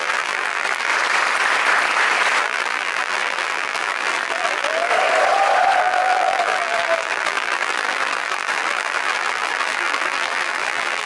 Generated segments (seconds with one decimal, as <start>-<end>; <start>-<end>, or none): 0.0-0.9; 2.4-4.9; 5.8-11.1